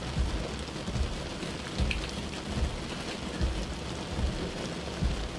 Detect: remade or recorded recorded